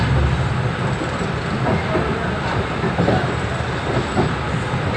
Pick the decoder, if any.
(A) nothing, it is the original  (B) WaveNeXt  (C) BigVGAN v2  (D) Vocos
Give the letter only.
A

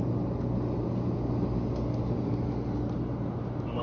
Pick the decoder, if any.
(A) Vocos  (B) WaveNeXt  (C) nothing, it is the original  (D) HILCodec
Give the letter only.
C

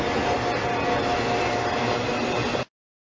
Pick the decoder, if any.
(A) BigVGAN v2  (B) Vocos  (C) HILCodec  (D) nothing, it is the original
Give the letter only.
D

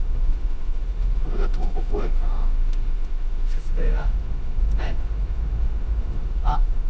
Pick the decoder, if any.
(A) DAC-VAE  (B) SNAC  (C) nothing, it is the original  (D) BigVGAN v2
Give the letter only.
A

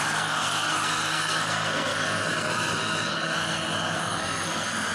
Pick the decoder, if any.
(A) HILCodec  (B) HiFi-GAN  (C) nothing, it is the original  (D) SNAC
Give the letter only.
D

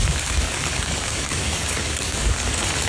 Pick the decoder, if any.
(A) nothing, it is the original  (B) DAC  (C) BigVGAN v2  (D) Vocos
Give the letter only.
B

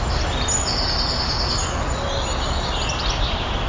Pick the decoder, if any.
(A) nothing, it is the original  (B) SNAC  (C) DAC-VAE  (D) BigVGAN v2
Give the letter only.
A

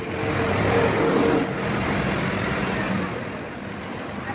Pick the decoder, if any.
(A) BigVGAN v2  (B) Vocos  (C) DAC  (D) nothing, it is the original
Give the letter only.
D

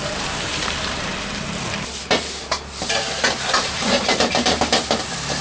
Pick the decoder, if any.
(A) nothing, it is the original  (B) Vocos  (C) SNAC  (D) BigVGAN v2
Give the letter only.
D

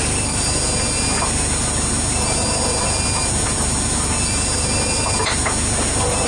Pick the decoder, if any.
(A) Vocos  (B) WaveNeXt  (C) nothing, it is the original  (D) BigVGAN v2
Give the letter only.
C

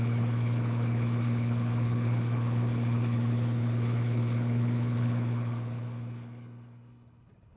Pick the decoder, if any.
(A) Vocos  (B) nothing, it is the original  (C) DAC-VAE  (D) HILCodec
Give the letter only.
D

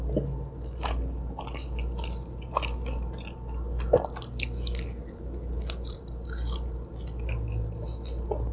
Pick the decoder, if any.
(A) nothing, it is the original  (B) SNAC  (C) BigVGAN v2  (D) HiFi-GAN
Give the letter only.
A